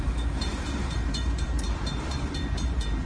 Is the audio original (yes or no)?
no